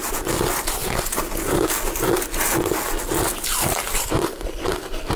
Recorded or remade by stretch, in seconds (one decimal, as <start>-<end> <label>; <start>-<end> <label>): 0.0-0.8 remade; 0.8-3.3 recorded; 3.3-5.2 remade